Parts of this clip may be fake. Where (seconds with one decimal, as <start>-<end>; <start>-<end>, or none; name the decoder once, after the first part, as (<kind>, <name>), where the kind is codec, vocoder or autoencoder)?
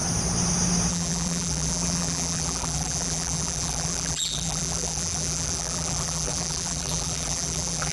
0.9-7.9 (vocoder, BigVGAN v2)